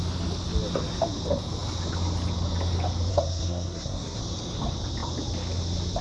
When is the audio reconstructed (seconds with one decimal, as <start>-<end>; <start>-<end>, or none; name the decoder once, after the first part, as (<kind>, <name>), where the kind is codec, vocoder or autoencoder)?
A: 3.1-4.2 (codec, SNAC)